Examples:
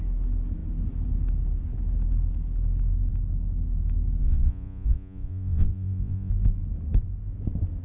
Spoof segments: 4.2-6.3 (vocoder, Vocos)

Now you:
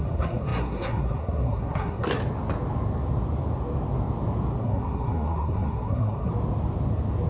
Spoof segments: 0.0-2.2 (codec, SNAC); 4.6-6.3

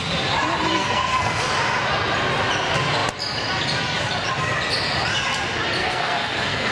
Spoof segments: 0.7-1.5 (codec, SNAC); 5.8-6.7

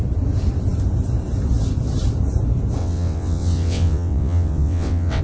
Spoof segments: 2.8-5.2 (vocoder, WaveNeXt)